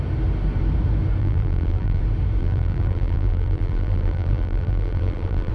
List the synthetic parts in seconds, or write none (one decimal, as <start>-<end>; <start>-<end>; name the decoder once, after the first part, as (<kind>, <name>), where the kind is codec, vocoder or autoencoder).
1.2-2.0 (vocoder, BigVGAN v2); 2.4-5.5